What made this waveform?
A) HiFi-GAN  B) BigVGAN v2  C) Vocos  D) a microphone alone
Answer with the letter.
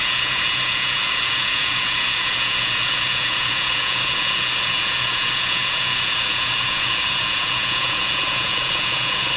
C